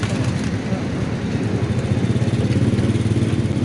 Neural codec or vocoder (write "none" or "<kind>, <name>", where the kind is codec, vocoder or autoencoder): none